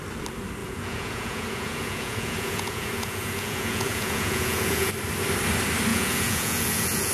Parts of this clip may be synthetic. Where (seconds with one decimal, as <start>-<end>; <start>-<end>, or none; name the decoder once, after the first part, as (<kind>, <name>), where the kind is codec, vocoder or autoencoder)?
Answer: 0.6-4.9 (vocoder, Vocos); 5.9-7.1

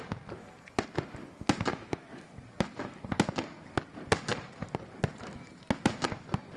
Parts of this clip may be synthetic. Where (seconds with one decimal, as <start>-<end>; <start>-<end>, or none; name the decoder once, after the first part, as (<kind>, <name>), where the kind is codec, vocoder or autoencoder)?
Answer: 1.7-2.3 (autoencoder, DAC-VAE)

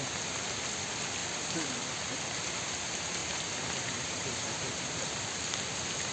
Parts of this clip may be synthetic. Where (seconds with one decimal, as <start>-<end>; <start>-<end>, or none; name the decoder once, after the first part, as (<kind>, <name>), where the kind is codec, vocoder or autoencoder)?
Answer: 1.2-1.7 (vocoder, BigVGAN v2); 3.2-5.5

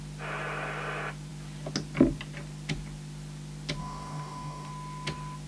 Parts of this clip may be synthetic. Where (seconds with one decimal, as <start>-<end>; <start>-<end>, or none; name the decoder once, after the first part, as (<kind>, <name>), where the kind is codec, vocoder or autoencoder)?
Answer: 3.8-4.7 (codec, DAC)

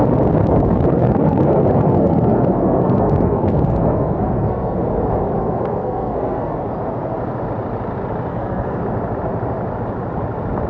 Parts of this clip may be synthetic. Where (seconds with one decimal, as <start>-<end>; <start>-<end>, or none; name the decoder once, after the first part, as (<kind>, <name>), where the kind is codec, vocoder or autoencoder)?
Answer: 0.4-4.8 (codec, SNAC); 5.4-6.6; 8.3-8.8

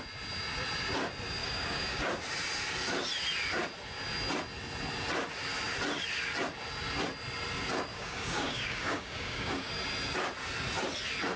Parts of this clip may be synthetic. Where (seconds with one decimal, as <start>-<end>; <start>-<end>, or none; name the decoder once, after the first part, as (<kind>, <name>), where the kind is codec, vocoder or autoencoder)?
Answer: 1.4-2.1 (codec, DAC); 7.9-9.7

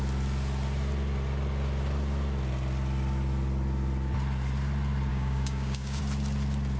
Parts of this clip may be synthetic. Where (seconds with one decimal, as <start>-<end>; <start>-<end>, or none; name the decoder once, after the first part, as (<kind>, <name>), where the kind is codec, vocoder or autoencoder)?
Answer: 5.1-6.0 (codec, DAC)

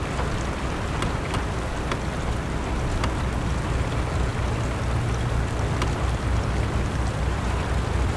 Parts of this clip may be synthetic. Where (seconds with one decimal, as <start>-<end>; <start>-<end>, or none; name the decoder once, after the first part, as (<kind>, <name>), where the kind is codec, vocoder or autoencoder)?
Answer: none